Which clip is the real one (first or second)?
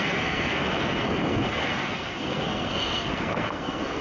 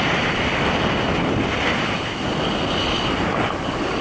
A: second